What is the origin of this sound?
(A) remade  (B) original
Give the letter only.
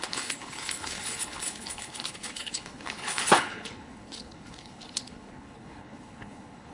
A